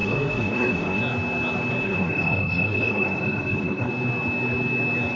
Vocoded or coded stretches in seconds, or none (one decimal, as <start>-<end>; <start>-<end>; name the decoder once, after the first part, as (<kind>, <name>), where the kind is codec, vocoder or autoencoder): 0.0-1.0 (codec, SNAC); 1.8-3.9

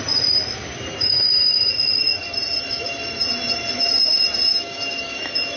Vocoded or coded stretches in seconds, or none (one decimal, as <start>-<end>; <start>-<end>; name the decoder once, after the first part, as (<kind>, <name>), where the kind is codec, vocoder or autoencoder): 0.9-1.7 (autoencoder, DAC-VAE); 4.5-5.6

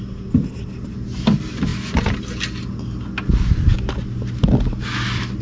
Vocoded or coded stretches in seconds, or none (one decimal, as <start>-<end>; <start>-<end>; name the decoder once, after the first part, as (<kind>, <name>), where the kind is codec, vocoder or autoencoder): none